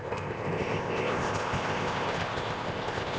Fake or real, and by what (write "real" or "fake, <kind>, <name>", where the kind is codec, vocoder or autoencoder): fake, codec, ZipCodec